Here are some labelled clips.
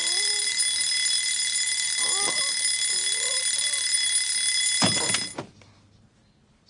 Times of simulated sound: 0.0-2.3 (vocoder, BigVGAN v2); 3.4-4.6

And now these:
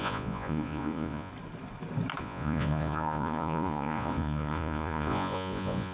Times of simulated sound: 0.0-1.3 (vocoder, Vocos); 2.2-5.9

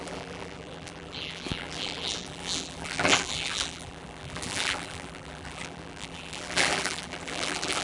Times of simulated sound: 0.0-7.8 (vocoder, BigVGAN v2)